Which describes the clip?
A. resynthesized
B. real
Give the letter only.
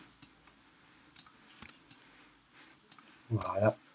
B